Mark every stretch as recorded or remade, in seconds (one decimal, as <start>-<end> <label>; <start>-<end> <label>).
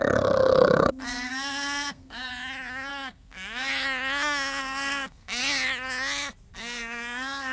0.0-2.3 remade; 2.3-2.9 recorded; 2.9-3.7 remade; 3.7-4.6 recorded; 4.6-5.4 remade; 5.4-6.5 recorded; 6.5-7.5 remade